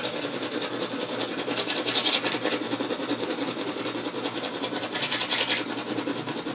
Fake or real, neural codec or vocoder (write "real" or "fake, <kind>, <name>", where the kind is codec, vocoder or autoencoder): real